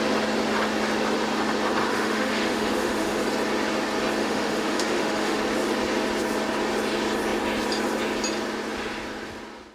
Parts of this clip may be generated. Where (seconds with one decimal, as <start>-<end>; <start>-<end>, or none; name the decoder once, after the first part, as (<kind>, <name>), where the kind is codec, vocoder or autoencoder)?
1.9-3.2 (autoencoder, DAC-VAE); 4.2-5.4